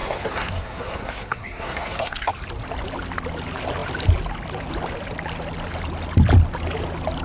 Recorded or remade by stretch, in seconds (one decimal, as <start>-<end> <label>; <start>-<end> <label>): 0.0-2.3 remade; 2.3-7.2 recorded

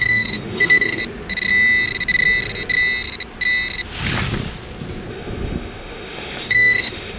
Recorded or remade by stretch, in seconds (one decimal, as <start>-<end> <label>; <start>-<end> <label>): 0.0-1.0 remade; 1.0-5.1 recorded; 5.1-7.2 remade

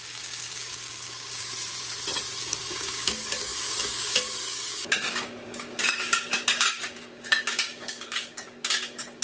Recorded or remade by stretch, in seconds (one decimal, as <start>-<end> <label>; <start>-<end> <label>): 0.0-1.5 remade; 1.5-2.4 recorded; 2.4-9.2 remade

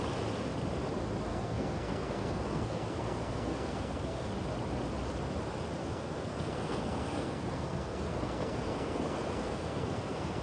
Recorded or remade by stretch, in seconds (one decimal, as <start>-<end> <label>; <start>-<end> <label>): 0.0-1.3 recorded; 1.3-4.3 remade; 4.3-5.8 recorded; 5.8-10.4 remade

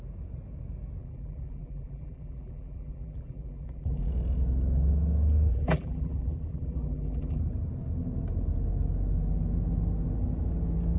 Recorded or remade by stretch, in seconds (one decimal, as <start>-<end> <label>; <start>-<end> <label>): 0.0-1.0 recorded; 1.0-4.1 remade; 4.1-5.5 recorded; 5.5-7.4 remade; 7.4-11.0 recorded

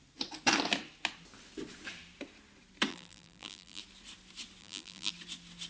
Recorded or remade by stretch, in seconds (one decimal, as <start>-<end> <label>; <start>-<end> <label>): 0.0-2.9 recorded; 2.9-3.8 remade; 3.8-4.6 recorded; 4.6-5.1 remade; 5.1-5.7 recorded

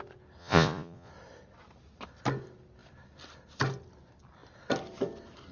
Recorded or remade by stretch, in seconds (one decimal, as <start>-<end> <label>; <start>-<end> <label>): 0.0-0.4 recorded; 0.4-1.1 remade; 1.1-5.5 recorded